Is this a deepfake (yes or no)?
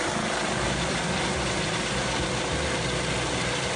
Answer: no